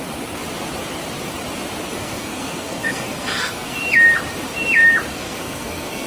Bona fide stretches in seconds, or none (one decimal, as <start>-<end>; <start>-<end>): 0.0-1.9; 3.8-5.1